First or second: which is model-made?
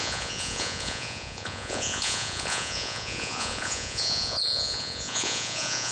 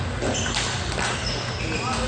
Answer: first